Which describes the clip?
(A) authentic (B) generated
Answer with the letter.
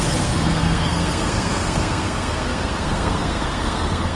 B